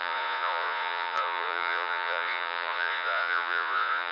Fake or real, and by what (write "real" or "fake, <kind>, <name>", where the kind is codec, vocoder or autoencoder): fake, vocoder, Vocos